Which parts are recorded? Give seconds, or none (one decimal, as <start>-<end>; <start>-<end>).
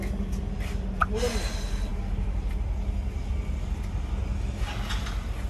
0.0-5.5